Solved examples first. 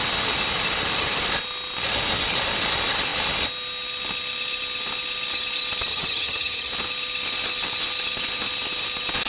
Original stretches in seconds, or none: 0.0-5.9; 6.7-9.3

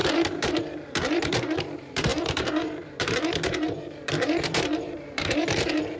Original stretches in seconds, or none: none

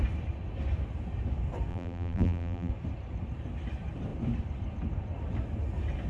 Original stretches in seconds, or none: 0.0-1.7; 2.7-6.1

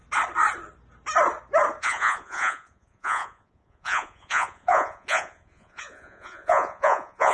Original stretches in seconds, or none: 0.0-1.8

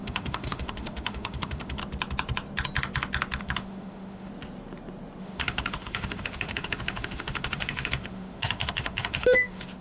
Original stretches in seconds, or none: 1.8-3.4; 4.3-5.2

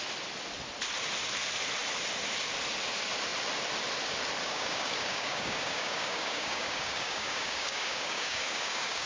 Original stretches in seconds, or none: 0.0-4.4

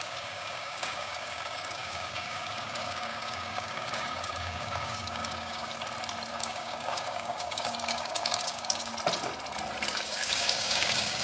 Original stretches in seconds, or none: 5.7-6.3; 8.9-9.9

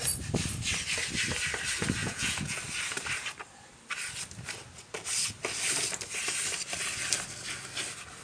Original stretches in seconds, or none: 0.0-2.0; 2.6-8.2